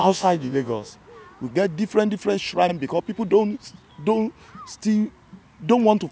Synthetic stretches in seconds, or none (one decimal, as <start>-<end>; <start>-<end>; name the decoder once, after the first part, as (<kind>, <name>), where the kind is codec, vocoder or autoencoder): 0.0-0.9 (vocoder, Vocos)